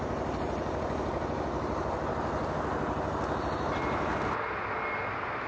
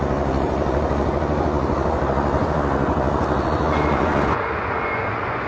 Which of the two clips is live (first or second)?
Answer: first